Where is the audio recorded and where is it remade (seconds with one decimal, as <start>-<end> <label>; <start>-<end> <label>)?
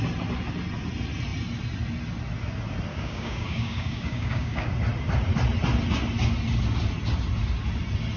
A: 0.0-2.9 recorded; 2.9-4.7 remade; 4.7-8.2 recorded